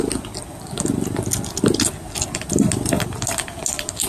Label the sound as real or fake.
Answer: real